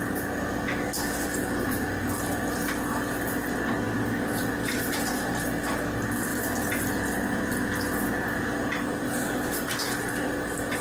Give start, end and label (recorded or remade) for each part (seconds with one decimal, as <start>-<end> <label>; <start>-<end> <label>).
0.0-10.8 recorded